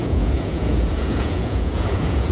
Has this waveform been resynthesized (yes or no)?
yes